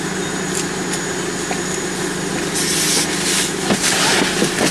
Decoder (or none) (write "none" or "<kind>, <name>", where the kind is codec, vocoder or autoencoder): none